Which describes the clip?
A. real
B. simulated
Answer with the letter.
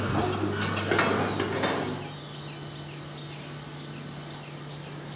A